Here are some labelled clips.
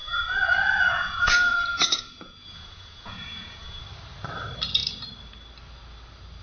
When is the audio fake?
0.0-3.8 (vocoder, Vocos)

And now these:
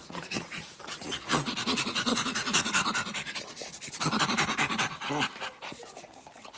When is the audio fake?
0.0-2.9 (vocoder, Vocos)

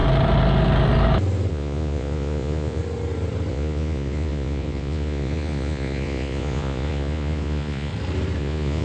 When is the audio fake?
1.5-2.8 (vocoder, Vocos); 3.5-7.9; 8.4-8.8